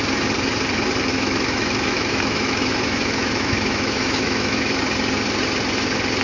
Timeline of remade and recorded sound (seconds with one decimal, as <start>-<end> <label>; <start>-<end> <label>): 0.0-1.1 recorded; 1.1-4.8 remade; 4.8-6.2 recorded